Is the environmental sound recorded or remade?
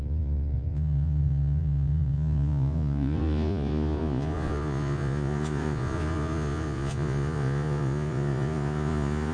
remade